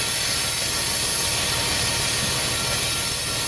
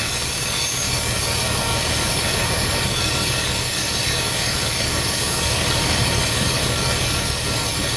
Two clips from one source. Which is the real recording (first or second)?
first